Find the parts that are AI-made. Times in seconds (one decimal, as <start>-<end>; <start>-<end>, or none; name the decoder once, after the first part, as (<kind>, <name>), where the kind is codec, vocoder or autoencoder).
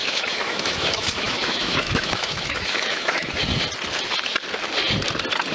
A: 0.0-3.3 (autoencoder, DAC-VAE)